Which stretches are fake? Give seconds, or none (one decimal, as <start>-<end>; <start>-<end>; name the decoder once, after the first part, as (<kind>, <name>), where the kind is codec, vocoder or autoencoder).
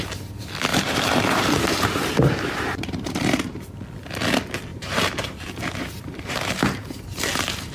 0.7-3.7 (vocoder, BigVGAN v2); 4.7-7.7